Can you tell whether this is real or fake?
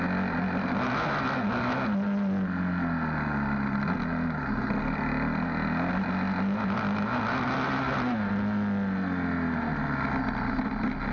real